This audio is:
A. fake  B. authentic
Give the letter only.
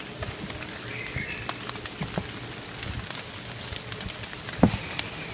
B